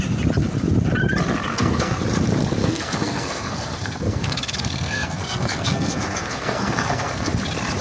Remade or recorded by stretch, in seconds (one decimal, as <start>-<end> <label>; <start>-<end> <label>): 0.0-1.5 recorded; 1.5-2.0 remade; 2.0-2.6 recorded; 2.6-7.3 remade; 7.3-7.8 recorded